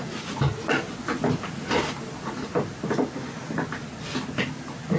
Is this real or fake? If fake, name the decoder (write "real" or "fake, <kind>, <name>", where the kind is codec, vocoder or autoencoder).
real